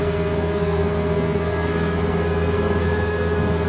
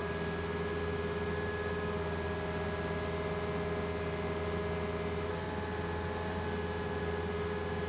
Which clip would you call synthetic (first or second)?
first